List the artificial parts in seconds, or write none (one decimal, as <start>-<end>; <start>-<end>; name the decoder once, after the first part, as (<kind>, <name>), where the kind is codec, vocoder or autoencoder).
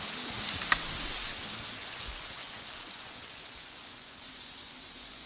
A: 1.8-5.3 (vocoder, Vocos)